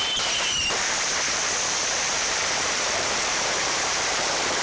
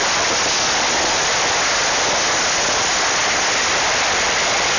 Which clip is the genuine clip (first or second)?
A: second